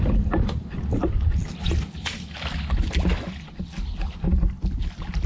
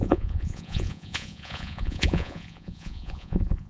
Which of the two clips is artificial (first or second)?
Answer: second